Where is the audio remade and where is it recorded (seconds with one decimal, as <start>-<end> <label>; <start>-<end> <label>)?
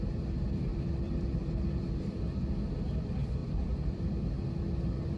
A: 0.0-0.7 recorded; 0.7-2.2 remade; 2.2-3.4 recorded; 3.4-4.6 remade; 4.6-5.2 recorded